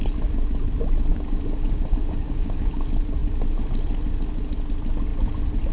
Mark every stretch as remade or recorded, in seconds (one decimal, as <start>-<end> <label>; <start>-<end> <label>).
0.0-1.1 recorded; 1.1-2.7 remade; 2.7-5.7 recorded